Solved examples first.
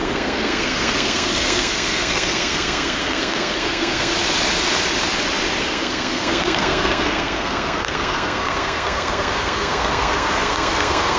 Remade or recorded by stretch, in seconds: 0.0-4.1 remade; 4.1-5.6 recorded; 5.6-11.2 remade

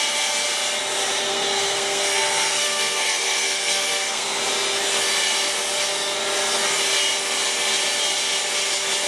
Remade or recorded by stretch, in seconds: 0.0-1.3 recorded; 1.3-4.4 remade; 4.4-9.1 recorded

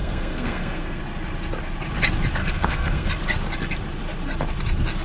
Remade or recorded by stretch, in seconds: 0.0-1.0 remade; 1.0-2.4 recorded; 2.4-3.1 remade; 3.1-5.0 recorded

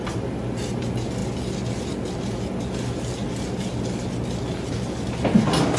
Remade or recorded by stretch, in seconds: 0.0-5.8 recorded

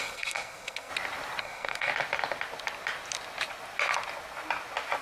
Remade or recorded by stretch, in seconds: 0.0-0.9 remade; 0.9-1.4 recorded; 1.4-1.9 remade; 1.9-5.0 recorded